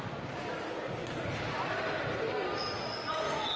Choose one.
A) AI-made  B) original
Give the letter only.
B